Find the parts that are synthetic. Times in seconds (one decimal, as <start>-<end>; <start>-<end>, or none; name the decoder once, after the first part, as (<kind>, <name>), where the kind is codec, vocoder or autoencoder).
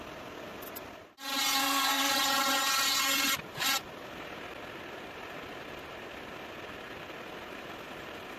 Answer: 1.6-2.1 (codec, SNAC)